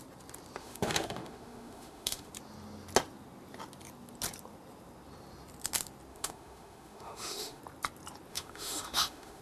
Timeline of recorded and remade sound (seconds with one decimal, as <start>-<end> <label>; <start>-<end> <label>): 0.0-0.6 recorded; 0.6-2.3 remade; 2.3-6.1 recorded; 6.1-7.6 remade; 7.6-8.3 recorded; 8.3-9.4 remade